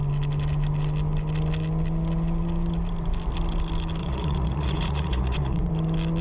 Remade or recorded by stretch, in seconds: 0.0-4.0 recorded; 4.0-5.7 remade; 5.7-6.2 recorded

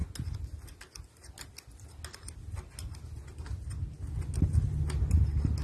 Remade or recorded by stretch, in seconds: 0.0-5.6 recorded

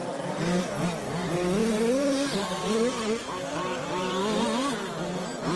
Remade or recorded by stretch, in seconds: 0.0-0.6 remade; 0.6-1.6 recorded; 1.6-4.2 remade; 4.2-5.6 recorded